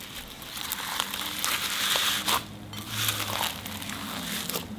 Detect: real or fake real